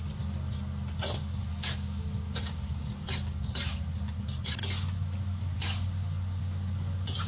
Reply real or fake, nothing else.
real